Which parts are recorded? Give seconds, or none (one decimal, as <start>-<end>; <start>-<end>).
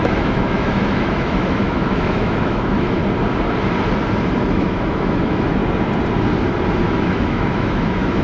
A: 3.0-4.5; 5.6-6.8